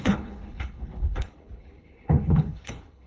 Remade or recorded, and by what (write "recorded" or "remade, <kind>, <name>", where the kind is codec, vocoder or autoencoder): remade, codec, HILCodec